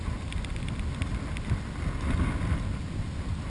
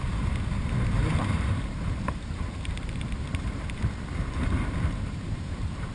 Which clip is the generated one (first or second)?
second